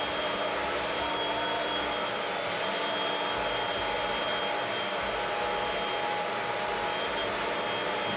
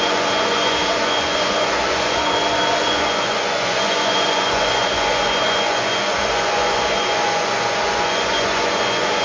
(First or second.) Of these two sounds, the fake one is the second